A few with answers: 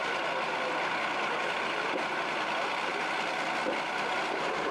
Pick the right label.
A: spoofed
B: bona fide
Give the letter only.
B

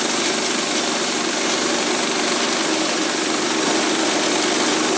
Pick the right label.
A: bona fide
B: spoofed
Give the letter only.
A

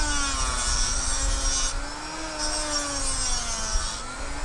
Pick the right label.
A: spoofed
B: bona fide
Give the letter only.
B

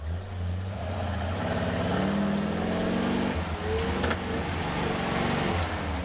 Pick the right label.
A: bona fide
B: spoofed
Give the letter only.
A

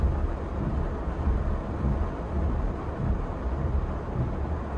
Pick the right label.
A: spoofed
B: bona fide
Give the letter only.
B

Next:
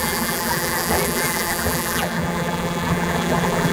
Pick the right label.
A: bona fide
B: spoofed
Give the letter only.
B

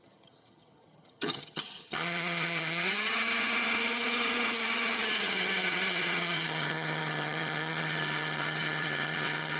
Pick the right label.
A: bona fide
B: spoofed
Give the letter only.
B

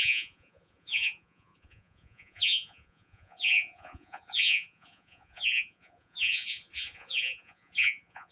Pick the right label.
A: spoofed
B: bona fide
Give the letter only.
A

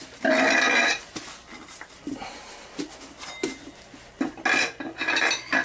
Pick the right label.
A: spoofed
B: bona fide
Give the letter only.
B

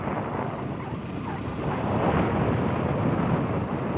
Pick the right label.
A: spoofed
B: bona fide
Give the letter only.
B